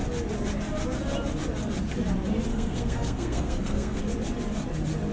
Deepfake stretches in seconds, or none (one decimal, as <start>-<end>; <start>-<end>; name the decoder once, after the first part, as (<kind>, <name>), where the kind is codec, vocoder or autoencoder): 2.5-4.0 (codec, SNAC)

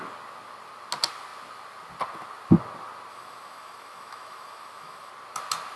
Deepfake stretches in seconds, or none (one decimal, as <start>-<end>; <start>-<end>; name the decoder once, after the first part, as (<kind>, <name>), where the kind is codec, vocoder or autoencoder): 3.1-5.1 (autoencoder, DAC-VAE)

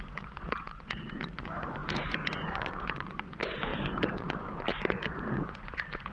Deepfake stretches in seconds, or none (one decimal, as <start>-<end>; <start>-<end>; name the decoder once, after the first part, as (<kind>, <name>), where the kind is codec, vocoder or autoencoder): 0.0-6.1 (vocoder, Vocos)

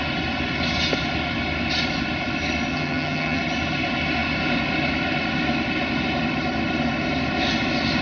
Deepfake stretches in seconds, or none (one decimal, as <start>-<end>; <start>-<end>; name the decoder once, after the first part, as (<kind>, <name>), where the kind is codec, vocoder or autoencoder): 2.7-3.4 (vocoder, HiFi-GAN)

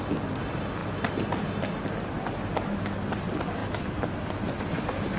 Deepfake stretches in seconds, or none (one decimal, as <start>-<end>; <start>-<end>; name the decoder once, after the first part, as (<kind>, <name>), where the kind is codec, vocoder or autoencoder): none

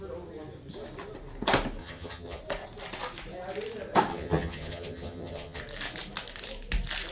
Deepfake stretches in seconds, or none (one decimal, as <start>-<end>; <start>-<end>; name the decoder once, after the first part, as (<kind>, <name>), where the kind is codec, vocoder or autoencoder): 1.8-2.4 (vocoder, HiFi-GAN); 4.1-5.6

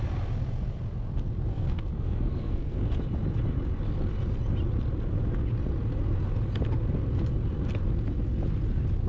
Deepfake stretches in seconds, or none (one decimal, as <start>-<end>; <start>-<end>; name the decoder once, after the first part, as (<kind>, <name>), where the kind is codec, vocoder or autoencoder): 1.5-2.9 (codec, SNAC)